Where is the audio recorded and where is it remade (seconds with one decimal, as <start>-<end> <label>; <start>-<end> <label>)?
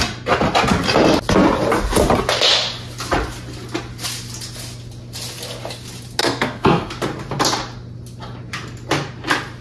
0.0-6.2 recorded; 6.2-6.9 remade; 6.9-9.6 recorded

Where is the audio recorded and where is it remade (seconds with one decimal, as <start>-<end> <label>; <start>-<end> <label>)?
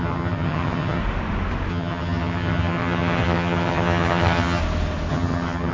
0.0-1.0 remade; 1.0-1.7 recorded; 1.7-4.6 remade; 4.6-5.1 recorded; 5.1-5.7 remade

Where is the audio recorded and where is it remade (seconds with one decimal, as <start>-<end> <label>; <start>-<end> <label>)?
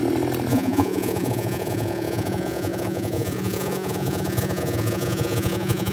0.0-0.5 recorded; 0.5-5.9 remade